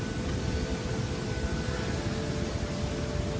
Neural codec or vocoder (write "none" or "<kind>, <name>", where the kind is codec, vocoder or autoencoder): none